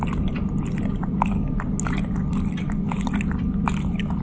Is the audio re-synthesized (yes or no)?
no